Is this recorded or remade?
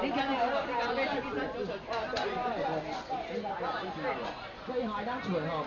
recorded